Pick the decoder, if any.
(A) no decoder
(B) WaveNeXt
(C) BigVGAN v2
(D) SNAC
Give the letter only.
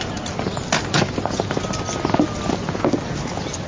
A